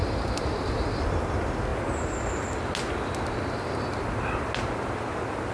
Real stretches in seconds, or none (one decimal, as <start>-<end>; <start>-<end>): 0.0-5.5